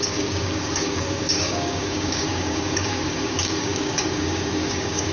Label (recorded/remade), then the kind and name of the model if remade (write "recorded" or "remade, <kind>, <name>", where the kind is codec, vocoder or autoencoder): remade, codec, DAC